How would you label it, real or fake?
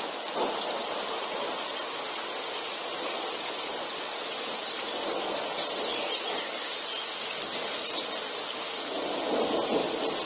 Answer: real